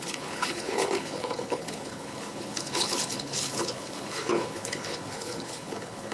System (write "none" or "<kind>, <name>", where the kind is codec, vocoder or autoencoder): codec, HILCodec